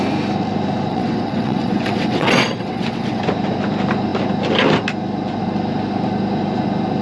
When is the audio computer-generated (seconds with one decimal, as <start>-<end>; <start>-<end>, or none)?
0.9-3.2